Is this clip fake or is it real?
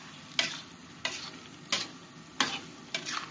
real